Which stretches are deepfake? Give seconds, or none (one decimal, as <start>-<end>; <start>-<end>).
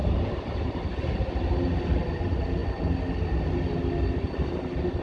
0.0-1.3